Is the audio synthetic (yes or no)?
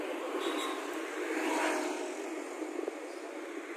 no